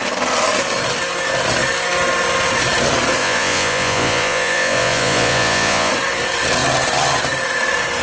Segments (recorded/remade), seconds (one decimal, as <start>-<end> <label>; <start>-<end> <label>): 0.0-3.2 recorded; 3.2-5.9 remade; 5.9-8.0 recorded